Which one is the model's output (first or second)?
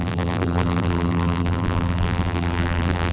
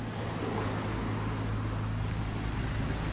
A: first